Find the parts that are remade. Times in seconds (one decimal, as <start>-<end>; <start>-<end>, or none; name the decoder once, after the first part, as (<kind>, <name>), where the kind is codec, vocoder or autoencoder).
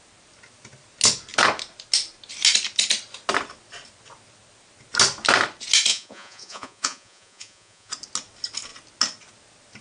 5.9-7.9 (vocoder, Vocos)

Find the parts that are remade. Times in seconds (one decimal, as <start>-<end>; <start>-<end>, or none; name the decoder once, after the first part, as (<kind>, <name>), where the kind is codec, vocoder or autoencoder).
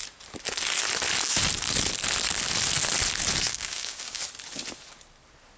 3.5-4.2 (codec, DAC)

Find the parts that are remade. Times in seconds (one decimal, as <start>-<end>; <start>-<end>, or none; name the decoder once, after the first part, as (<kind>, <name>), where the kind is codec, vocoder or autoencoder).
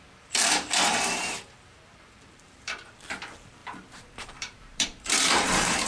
0.0-5.9 (vocoder, BigVGAN v2)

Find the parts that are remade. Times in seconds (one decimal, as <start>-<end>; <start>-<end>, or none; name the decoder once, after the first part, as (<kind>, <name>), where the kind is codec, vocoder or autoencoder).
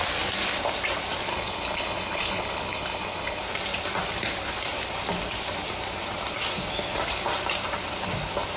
1.3-3.4 (codec, HILCodec)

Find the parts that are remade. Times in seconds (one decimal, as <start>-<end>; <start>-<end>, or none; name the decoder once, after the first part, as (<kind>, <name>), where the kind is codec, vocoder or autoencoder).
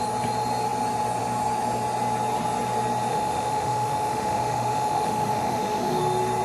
3.1-6.0 (autoencoder, DAC-VAE)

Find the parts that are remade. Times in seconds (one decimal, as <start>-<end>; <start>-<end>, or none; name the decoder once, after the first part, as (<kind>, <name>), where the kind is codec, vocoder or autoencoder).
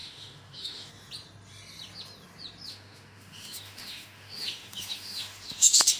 0.0-0.9 (autoencoder, DAC-VAE); 2.7-6.0